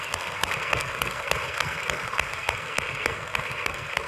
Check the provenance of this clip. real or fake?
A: fake